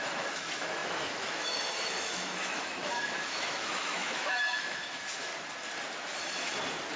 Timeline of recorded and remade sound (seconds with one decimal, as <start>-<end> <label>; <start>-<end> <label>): 0.0-5.3 remade; 5.3-7.0 recorded